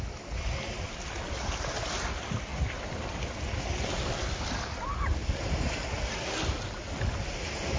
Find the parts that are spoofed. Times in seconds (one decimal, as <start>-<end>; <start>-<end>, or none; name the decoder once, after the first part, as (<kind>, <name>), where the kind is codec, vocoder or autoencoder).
none